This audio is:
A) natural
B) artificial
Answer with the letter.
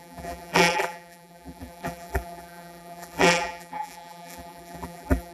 B